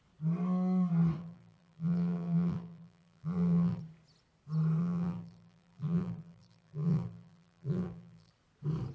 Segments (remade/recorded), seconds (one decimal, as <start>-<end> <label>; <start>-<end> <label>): 0.0-1.2 recorded; 1.2-3.8 remade; 3.8-4.8 recorded; 4.8-8.3 remade; 8.3-8.9 recorded